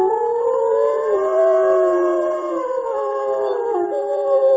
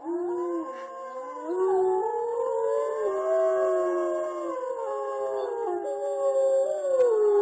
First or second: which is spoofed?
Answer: first